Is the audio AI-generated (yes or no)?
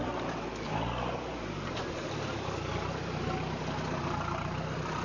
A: yes